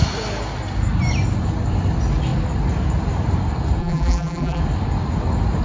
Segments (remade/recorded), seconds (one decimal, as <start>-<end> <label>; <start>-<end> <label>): 0.0-3.8 recorded; 3.8-4.6 remade; 4.6-5.6 recorded